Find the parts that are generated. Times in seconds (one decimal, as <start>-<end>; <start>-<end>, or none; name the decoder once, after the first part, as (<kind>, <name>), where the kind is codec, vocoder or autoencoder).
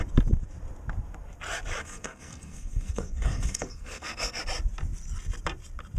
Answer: 1.8-4.4 (codec, SNAC)